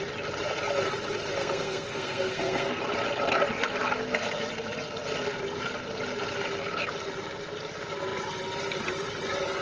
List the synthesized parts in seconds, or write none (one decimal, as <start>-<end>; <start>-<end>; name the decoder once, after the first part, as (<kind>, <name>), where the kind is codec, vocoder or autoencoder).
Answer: 1.4-2.8 (codec, SNAC)